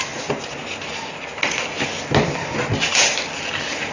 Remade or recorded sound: recorded